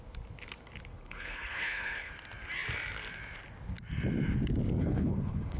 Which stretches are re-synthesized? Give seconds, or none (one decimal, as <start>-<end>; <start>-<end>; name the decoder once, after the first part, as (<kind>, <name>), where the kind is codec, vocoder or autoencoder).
0.9-2.1 (codec, HILCodec); 4.8-5.6

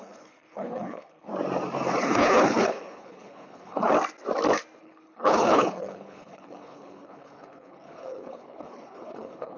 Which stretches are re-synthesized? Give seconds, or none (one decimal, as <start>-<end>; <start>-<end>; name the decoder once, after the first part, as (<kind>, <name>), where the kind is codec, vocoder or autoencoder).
0.0-1.3 (codec, HILCodec); 2.0-3.9; 4.8-9.6

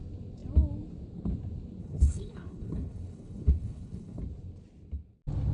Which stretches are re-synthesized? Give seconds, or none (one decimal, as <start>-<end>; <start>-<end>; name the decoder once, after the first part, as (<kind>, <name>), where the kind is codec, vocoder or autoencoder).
1.8-4.2 (codec, HILCodec)

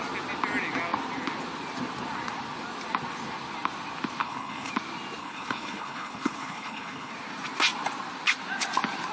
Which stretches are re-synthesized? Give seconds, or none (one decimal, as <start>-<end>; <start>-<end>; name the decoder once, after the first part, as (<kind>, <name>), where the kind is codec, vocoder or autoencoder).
4.2-4.7 (codec, HILCodec); 5.2-7.1